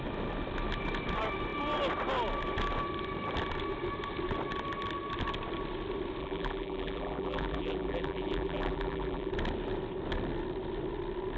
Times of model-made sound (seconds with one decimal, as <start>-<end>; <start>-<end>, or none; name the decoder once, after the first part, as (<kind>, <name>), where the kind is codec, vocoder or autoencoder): 6.2-9.3 (vocoder, BigVGAN v2)